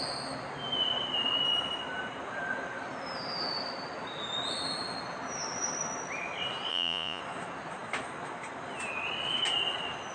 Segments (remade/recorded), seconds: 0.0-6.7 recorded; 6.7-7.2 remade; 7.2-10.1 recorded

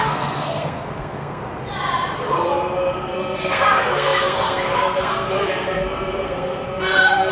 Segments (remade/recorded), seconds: 0.0-1.4 remade; 1.4-3.0 recorded; 3.0-7.3 remade

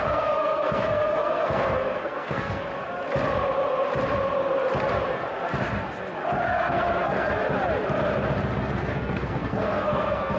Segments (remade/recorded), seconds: 0.0-2.7 remade; 2.7-6.4 recorded; 6.4-7.4 remade; 7.4-8.6 recorded; 8.6-10.4 remade